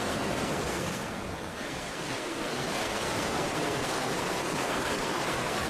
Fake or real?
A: fake